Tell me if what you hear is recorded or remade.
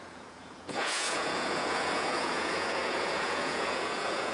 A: remade